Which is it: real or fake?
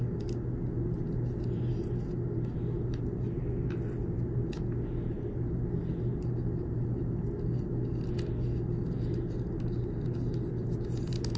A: real